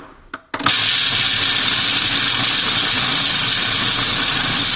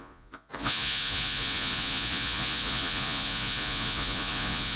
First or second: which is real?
first